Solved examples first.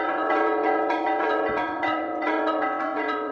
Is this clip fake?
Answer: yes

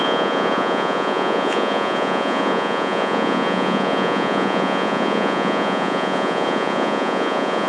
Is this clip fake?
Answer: yes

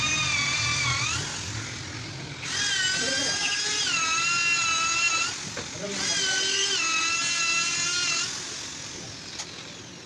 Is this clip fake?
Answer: no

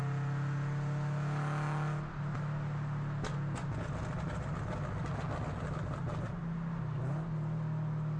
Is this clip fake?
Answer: no